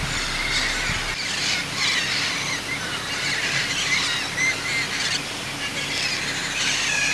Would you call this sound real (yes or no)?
yes